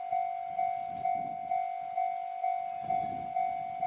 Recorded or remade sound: recorded